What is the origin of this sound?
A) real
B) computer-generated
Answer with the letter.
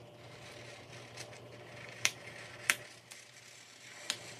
A